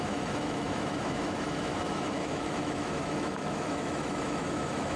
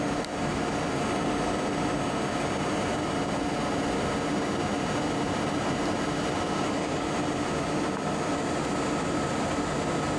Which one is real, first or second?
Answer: second